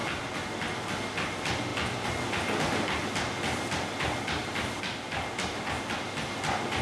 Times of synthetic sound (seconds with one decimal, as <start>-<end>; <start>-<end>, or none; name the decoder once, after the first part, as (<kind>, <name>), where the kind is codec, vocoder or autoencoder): none